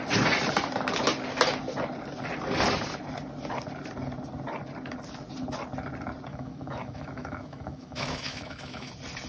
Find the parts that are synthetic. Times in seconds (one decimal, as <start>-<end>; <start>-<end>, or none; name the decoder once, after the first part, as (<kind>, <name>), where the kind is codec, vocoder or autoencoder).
6.3-8.9 (autoencoder, DAC-VAE)